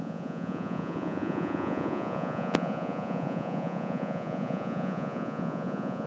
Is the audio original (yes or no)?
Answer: no